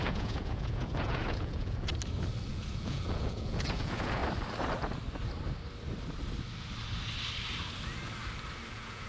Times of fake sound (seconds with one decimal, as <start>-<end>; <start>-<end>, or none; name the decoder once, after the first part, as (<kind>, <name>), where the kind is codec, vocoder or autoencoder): 0.0-1.9 (vocoder, Vocos); 2.5-4.2; 8.7-9.1